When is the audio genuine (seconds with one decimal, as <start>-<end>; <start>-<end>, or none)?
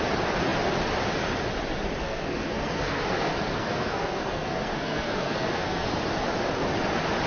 0.0-2.0; 5.9-7.3